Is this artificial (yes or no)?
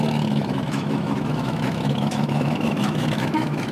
yes